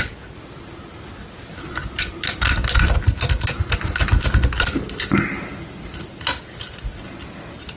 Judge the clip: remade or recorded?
recorded